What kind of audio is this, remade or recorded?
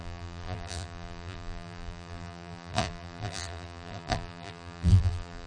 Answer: remade